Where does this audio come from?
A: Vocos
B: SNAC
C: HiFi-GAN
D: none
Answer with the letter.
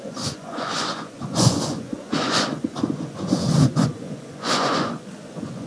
A